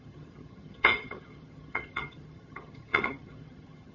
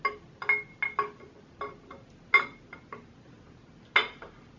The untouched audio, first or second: second